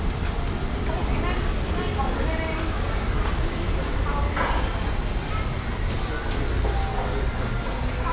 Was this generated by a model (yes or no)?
no